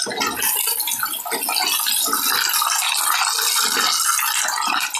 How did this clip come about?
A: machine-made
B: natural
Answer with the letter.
B